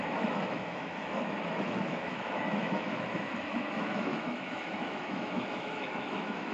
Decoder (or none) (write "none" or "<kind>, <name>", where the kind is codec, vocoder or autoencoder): autoencoder, DAC-VAE